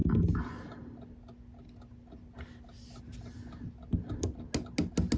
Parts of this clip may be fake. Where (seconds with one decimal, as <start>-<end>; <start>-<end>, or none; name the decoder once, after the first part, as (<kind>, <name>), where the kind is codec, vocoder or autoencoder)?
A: none